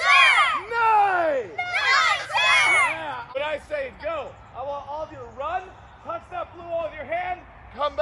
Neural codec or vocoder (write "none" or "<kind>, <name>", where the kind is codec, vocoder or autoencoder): none